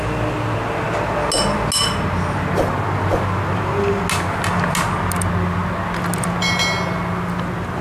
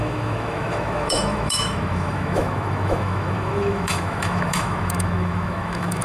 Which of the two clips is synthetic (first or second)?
second